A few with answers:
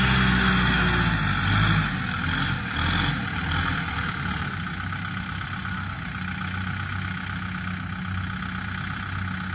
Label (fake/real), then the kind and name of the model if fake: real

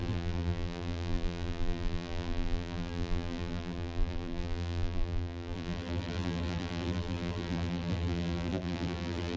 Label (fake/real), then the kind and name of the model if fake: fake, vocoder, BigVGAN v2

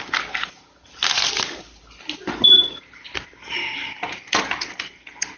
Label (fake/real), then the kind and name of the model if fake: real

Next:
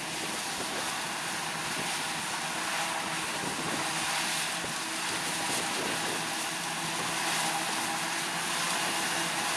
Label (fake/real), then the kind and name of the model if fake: real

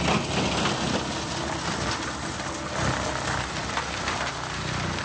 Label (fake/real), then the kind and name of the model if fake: real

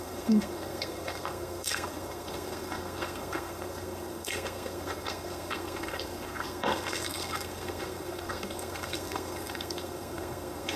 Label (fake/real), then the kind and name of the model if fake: fake, codec, SNAC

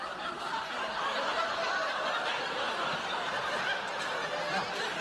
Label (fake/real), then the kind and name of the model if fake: real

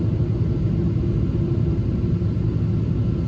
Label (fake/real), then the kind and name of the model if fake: real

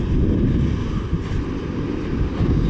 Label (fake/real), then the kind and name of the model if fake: real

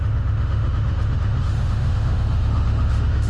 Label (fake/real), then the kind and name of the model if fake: fake, autoencoder, DAC-VAE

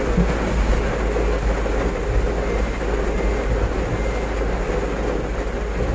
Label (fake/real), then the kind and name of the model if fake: real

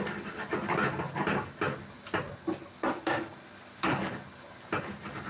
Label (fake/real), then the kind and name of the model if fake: real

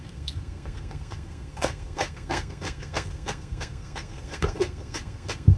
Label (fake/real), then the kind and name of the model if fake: fake, codec, SNAC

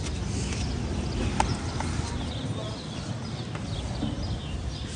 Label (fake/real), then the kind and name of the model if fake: real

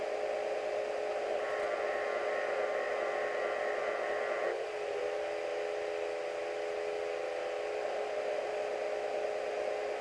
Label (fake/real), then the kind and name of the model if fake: real